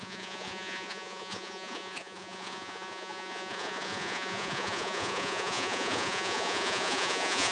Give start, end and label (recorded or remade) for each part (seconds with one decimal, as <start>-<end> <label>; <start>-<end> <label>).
0.0-7.5 remade